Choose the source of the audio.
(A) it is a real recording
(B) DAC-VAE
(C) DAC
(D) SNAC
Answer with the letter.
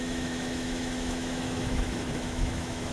B